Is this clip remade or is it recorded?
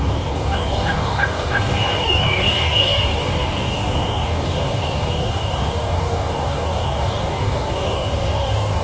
remade